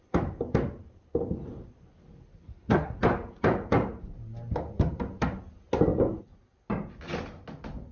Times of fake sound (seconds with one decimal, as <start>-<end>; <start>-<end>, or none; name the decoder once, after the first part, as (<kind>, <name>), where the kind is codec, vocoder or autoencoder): 2.5-3.0 (codec, SNAC)